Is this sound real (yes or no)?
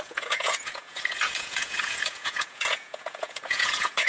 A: no